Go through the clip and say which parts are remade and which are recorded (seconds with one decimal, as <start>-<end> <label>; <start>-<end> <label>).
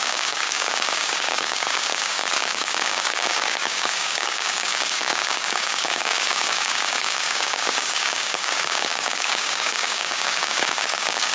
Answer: 0.0-11.3 remade